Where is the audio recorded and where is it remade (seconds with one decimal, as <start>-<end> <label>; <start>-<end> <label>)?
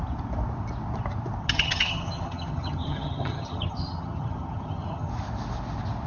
0.0-1.4 recorded; 1.4-5.1 remade; 5.1-6.1 recorded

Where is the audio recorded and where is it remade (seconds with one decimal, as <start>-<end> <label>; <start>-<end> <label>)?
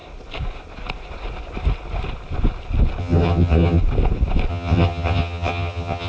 0.0-3.0 recorded; 3.0-3.8 remade; 3.8-4.5 recorded; 4.5-6.1 remade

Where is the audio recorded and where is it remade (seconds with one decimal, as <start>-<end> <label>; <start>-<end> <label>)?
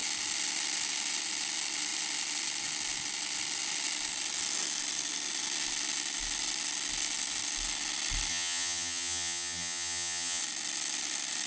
0.0-8.3 recorded; 8.3-10.4 remade; 10.4-11.5 recorded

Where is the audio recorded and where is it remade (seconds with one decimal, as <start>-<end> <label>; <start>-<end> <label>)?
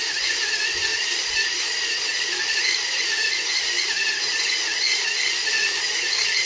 0.0-6.5 recorded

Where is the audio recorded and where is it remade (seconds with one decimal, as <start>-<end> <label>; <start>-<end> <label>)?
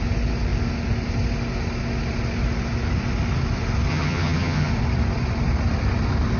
0.0-3.9 recorded; 3.9-4.7 remade; 4.7-6.4 recorded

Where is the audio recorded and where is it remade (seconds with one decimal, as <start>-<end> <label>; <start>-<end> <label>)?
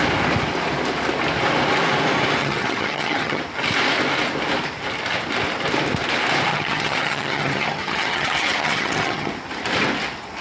0.0-2.4 recorded; 2.4-3.4 remade; 3.4-6.5 recorded; 6.5-9.3 remade; 9.3-10.4 recorded